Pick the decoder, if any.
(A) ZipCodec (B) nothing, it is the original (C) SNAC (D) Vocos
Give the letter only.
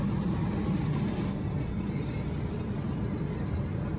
B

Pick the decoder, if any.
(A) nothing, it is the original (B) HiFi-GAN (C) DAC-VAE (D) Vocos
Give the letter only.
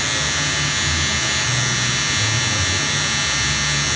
A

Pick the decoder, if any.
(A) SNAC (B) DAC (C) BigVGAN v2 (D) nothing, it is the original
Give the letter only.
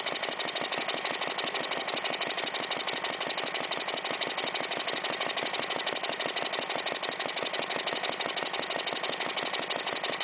D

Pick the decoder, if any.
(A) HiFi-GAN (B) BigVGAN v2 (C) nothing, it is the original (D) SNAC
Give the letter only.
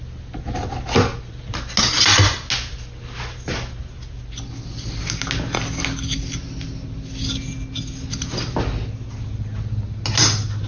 C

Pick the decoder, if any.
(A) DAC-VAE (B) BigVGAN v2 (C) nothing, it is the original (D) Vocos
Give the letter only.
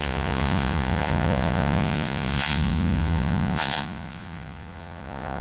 D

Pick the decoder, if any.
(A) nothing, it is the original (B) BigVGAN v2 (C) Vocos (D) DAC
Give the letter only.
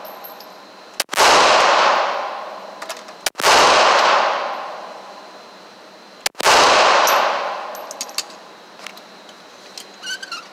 A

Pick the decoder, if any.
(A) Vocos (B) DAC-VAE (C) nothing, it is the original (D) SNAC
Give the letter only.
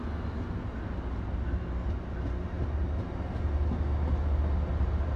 C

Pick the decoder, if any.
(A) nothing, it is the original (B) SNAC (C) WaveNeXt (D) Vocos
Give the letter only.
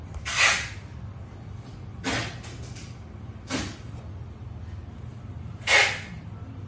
A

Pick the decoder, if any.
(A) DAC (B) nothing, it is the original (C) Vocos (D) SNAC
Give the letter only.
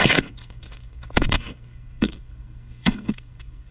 D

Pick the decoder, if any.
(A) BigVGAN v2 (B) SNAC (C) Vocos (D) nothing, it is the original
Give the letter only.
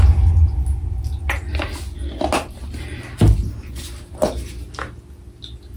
D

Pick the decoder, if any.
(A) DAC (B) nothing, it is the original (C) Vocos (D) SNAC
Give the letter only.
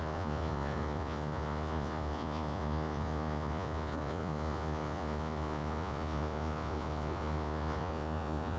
C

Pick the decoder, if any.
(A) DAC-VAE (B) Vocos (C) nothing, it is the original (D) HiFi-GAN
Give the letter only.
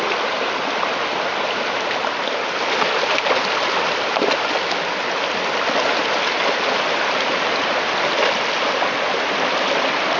C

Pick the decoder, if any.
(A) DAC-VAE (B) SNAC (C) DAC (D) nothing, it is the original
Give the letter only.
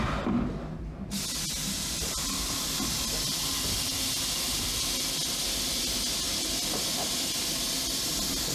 D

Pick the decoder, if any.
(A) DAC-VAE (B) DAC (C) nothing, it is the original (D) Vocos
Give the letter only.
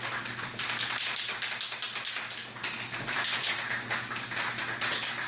C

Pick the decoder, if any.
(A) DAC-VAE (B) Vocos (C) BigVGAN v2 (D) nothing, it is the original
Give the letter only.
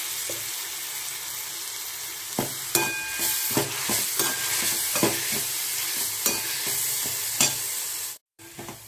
D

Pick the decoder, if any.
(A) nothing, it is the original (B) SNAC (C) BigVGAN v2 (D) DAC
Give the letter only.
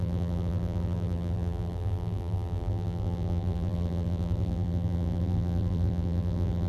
C